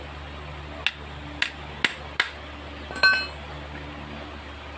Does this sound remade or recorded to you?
recorded